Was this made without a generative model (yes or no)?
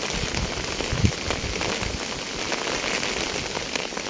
yes